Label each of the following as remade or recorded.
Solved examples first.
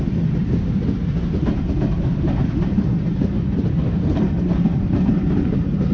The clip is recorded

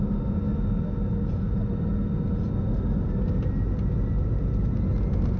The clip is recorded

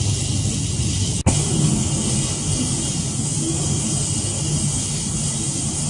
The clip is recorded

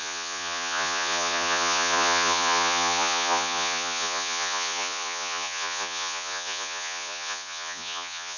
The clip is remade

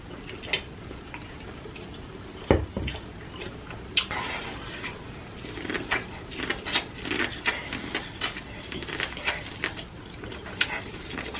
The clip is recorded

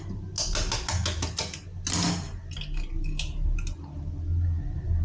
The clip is recorded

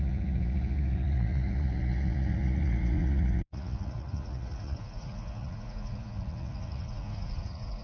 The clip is remade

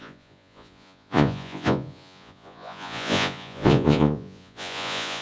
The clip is remade